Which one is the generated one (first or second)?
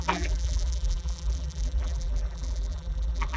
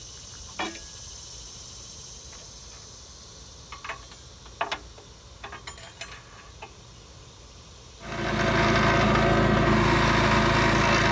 first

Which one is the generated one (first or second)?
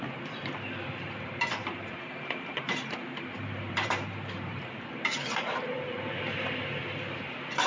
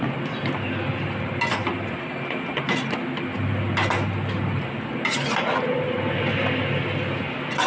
first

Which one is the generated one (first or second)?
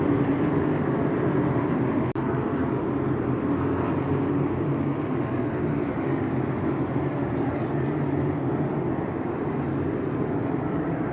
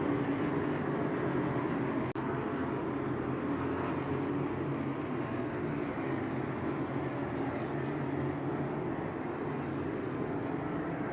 first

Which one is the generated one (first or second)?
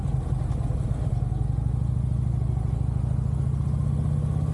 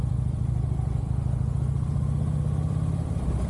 second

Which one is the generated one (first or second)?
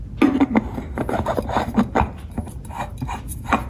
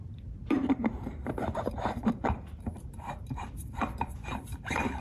second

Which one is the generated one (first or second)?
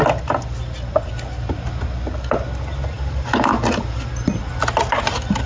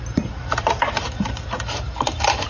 second